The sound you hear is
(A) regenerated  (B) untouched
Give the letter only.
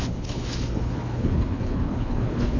A